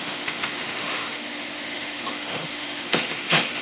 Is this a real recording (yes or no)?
no